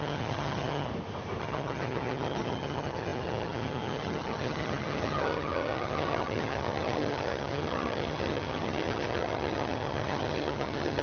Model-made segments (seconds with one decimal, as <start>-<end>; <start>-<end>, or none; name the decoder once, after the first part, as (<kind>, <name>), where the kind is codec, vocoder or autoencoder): 0.0-0.9 (vocoder, HiFi-GAN); 1.4-11.0